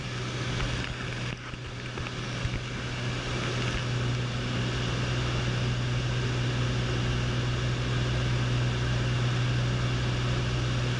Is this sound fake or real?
real